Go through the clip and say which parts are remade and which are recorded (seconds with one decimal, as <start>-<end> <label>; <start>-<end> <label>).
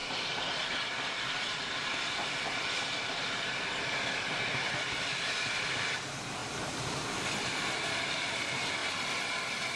0.0-9.8 recorded